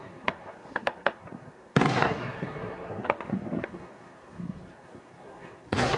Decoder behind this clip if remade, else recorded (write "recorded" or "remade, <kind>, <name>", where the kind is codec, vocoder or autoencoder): remade, codec, SNAC